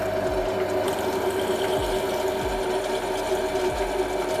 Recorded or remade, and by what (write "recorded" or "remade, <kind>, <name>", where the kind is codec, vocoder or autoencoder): recorded